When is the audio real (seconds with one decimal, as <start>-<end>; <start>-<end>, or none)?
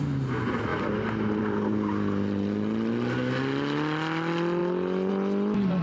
0.0-5.8